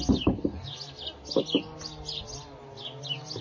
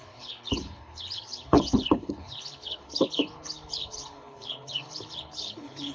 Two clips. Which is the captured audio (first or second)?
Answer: first